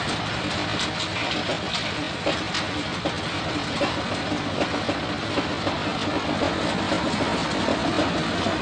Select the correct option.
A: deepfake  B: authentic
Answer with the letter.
B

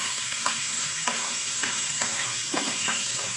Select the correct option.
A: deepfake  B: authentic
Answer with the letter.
A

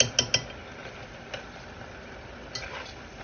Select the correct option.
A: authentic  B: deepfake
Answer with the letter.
A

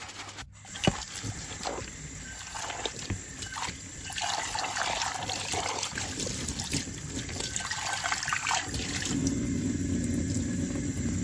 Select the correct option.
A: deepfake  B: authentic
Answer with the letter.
B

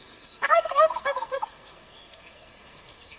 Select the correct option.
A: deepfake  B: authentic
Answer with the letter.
A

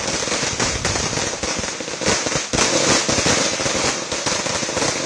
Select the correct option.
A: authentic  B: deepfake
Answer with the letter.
A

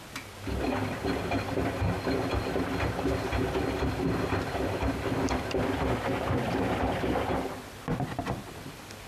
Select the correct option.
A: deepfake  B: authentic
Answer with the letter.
B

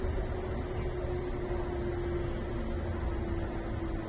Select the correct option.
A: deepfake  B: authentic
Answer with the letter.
B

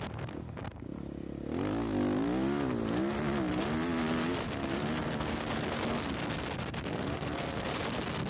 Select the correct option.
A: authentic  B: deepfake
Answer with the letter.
A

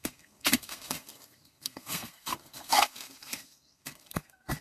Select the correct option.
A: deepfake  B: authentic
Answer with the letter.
A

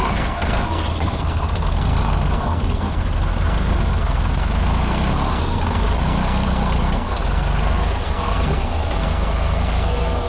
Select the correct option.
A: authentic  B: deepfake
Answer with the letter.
B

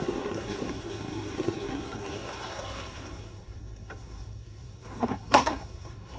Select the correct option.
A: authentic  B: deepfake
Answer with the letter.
B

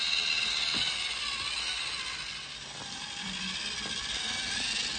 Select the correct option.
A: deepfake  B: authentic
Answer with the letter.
B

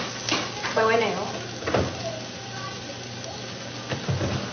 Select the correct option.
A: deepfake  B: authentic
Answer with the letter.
B